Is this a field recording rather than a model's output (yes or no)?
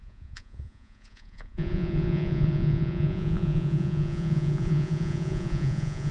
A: no